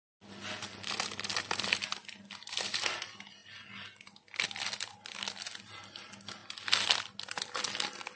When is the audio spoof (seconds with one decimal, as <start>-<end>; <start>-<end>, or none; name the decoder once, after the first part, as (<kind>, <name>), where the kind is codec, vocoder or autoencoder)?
3.4-4.9 (vocoder, BigVGAN v2)

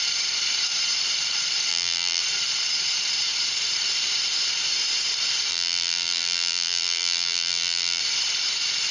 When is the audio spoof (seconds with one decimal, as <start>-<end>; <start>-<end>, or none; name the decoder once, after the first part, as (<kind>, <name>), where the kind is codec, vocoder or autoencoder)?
1.7-2.2 (vocoder, BigVGAN v2); 5.5-8.0

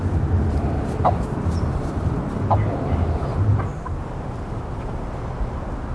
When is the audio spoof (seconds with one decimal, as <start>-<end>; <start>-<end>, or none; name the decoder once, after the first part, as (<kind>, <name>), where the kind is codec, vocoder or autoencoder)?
3.5-5.2 (vocoder, BigVGAN v2)

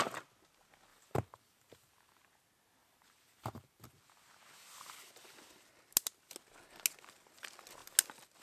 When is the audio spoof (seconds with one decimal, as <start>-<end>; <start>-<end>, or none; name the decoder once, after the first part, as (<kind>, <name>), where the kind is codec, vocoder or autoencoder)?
0.9-2.2 (vocoder, BigVGAN v2); 2.8-3.8